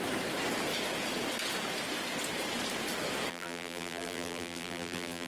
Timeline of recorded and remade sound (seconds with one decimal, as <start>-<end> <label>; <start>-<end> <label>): 0.0-3.3 recorded; 3.3-5.3 remade